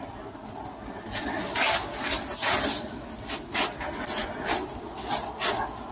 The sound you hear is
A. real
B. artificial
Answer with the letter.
A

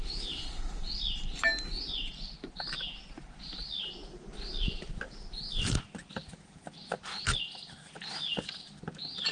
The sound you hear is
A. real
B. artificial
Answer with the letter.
A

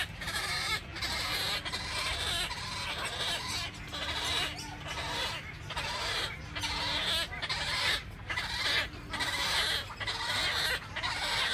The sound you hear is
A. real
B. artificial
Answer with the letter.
A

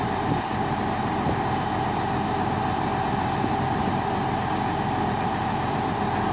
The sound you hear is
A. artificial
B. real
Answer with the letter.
A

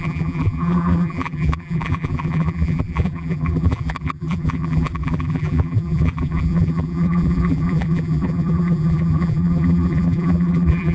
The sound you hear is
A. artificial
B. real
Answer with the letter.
A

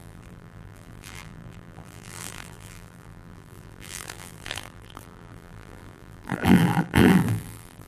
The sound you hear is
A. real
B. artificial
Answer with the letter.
B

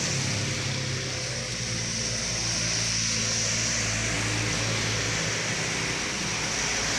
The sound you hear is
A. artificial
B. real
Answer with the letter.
B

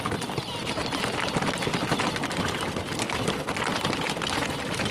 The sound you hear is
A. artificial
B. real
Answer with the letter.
B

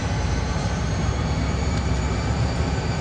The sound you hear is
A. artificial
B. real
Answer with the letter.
A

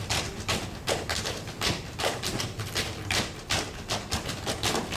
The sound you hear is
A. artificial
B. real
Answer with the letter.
B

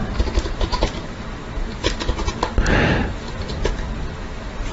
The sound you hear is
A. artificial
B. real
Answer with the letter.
B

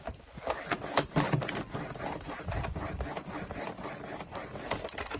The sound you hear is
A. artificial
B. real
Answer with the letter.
B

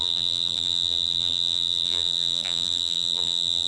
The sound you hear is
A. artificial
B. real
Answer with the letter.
A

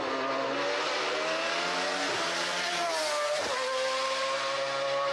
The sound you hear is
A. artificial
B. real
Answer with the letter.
B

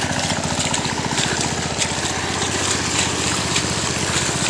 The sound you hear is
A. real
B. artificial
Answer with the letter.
B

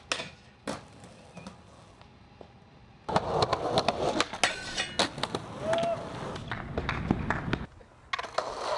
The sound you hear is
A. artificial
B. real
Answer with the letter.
B